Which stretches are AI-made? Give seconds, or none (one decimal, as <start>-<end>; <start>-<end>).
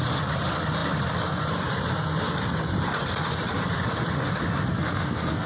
4.7-5.5